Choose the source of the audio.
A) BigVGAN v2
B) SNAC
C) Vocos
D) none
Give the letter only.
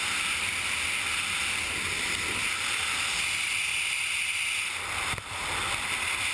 D